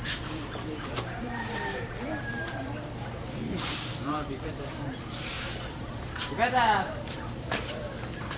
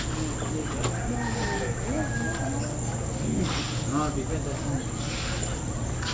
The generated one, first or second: first